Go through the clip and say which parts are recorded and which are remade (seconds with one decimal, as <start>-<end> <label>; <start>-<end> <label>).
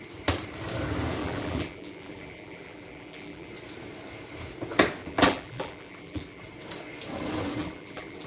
0.0-1.2 recorded; 1.2-3.5 remade; 3.5-5.0 recorded; 5.0-6.4 remade; 6.4-7.6 recorded; 7.6-8.3 remade